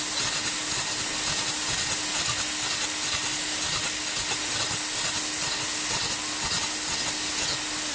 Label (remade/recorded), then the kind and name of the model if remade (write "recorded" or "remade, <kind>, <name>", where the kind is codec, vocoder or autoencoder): recorded